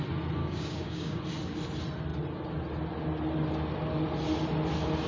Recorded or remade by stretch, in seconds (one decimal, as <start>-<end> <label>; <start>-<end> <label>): 0.0-0.4 recorded; 0.4-1.2 remade; 1.2-5.1 recorded